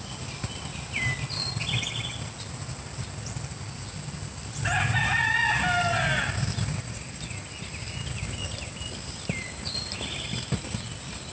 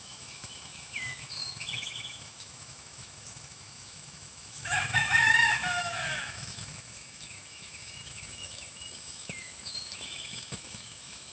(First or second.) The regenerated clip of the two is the second